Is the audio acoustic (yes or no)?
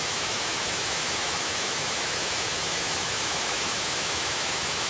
no